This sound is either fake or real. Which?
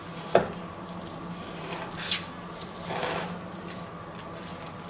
real